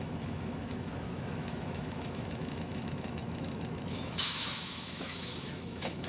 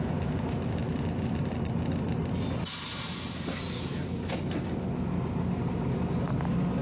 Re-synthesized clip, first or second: first